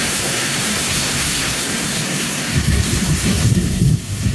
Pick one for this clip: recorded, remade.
remade